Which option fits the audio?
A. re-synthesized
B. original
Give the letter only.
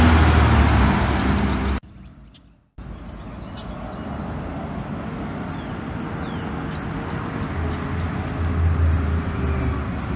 B